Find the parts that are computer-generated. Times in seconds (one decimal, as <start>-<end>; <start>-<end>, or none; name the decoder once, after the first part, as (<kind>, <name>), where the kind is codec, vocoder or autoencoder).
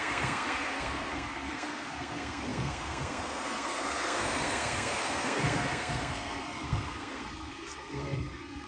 0.0-8.7 (codec, SNAC)